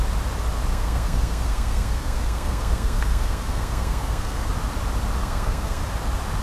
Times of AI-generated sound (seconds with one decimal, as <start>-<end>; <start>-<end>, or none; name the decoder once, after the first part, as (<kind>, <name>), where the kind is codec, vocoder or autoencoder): 0.7-4.5 (codec, SNAC); 5.2-5.8